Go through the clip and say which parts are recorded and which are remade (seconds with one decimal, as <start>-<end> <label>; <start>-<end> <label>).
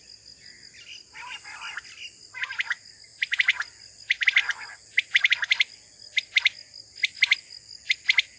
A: 0.0-8.4 recorded